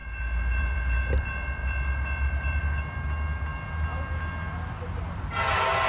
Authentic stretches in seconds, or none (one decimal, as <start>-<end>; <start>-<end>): 1.1-1.6; 2.6-5.9